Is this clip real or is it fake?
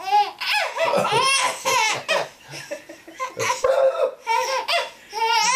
real